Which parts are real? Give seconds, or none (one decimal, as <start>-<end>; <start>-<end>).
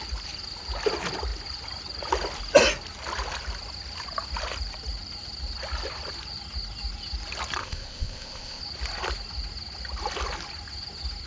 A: 0.0-7.6; 8.6-11.3